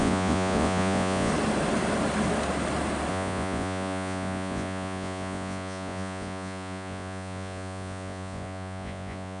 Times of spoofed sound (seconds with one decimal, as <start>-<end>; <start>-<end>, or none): 0.0-1.3; 3.1-9.4